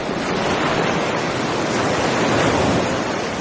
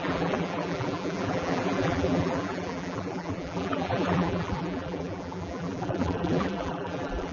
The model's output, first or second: second